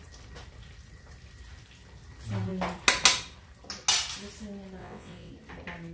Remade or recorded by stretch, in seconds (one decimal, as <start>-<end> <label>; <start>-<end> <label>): 0.0-4.8 recorded; 4.8-5.3 remade; 5.3-5.9 recorded